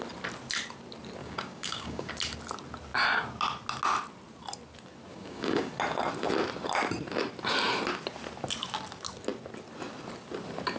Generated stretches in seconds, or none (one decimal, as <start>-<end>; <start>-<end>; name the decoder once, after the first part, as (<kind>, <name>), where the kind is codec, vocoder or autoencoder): 1.2-2.1 (codec, DAC); 5.1-5.7